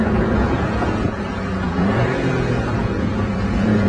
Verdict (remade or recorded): remade